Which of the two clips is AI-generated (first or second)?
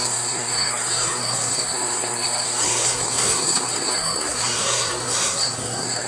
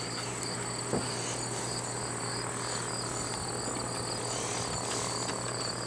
first